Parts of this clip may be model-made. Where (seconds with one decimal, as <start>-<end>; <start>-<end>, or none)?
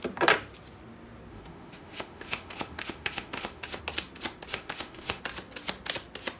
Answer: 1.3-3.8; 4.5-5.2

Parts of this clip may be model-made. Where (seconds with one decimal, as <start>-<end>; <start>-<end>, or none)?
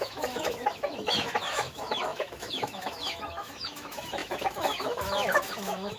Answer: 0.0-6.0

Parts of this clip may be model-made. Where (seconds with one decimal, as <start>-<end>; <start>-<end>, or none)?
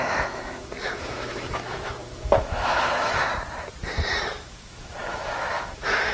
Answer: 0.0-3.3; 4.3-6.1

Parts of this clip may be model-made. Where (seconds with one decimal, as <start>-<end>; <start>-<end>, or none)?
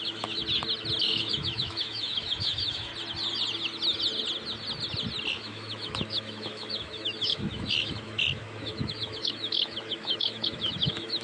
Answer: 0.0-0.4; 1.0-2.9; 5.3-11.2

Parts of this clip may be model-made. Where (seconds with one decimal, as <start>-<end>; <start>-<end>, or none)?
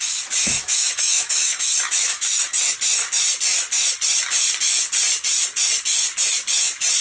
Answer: 0.4-2.6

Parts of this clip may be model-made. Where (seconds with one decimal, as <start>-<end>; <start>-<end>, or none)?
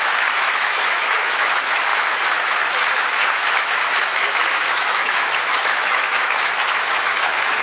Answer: 0.0-7.6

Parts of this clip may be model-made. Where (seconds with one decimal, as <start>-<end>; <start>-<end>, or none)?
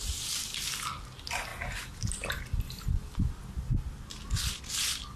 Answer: none